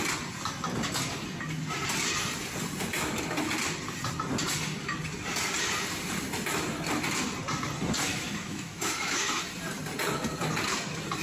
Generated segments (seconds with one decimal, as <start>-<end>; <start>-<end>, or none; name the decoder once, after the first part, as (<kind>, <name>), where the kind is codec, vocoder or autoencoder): 8.1-9.3 (autoencoder, DAC-VAE)